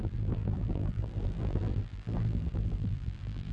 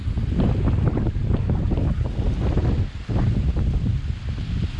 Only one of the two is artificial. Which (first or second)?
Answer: first